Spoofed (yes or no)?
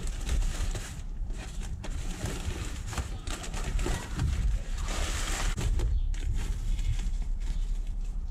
yes